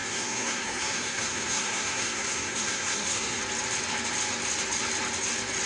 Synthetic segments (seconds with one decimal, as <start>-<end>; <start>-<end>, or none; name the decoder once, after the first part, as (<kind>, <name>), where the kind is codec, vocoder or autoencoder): 0.0-3.4 (codec, SNAC)